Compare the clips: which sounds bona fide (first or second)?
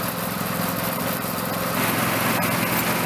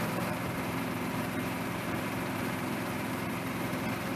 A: first